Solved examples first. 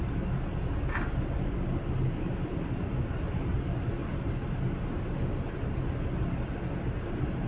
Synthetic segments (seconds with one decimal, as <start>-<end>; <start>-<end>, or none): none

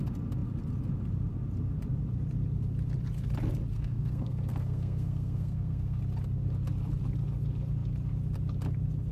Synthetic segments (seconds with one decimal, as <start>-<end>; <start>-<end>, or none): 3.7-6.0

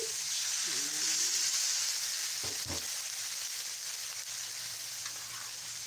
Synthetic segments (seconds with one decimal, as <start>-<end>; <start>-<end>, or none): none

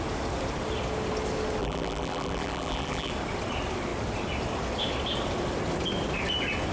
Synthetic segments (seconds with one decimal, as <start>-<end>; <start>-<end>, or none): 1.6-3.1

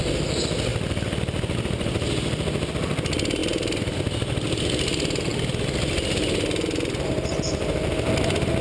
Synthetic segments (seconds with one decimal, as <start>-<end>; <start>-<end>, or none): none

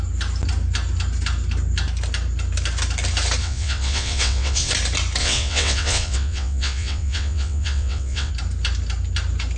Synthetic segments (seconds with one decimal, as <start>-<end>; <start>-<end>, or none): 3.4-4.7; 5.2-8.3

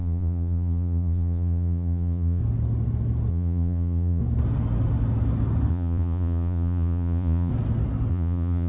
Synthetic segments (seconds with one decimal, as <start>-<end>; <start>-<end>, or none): 0.0-2.4; 3.3-4.2; 5.7-7.5; 8.1-8.7

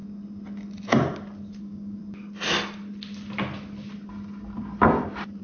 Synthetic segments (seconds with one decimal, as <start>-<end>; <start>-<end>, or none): 1.5-2.0